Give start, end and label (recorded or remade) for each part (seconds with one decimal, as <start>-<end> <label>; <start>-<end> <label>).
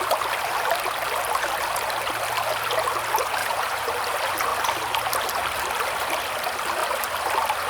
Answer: 0.0-3.4 recorded; 3.4-3.9 remade; 3.9-7.7 recorded